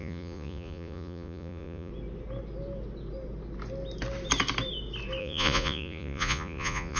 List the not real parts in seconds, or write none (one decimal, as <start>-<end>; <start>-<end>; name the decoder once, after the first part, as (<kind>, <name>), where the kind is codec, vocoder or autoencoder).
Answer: 0.0-1.9 (vocoder, Vocos); 5.2-7.0